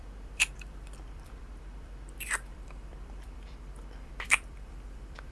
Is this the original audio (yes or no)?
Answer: no